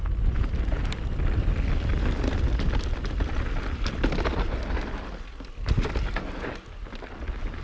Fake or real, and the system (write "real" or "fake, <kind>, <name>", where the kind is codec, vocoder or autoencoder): real